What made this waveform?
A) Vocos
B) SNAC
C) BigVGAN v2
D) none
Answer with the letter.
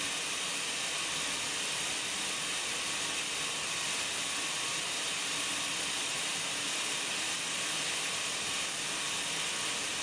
D